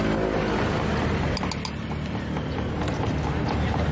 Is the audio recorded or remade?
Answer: recorded